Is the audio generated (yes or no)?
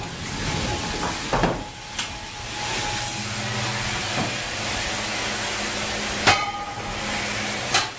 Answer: no